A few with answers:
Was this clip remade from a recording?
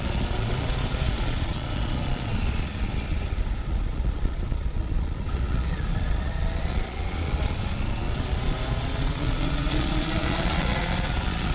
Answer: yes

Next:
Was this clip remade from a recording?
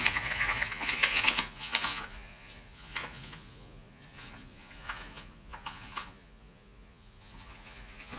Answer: yes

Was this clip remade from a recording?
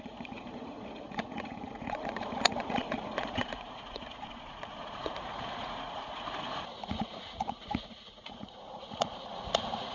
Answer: yes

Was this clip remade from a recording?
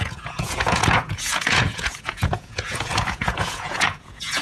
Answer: yes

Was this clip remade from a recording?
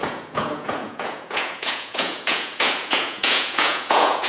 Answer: yes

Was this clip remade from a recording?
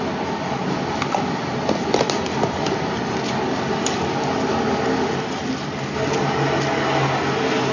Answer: no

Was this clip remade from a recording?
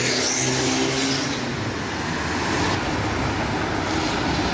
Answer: no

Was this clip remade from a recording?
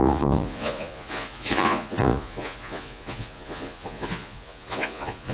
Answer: yes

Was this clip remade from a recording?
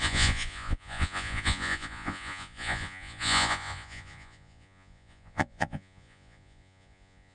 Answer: yes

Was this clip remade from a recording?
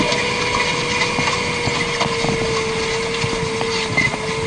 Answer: no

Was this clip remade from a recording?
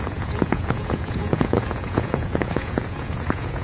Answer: yes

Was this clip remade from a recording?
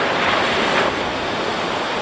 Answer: no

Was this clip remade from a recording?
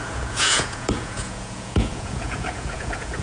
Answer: yes